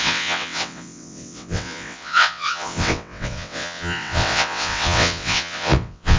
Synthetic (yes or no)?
yes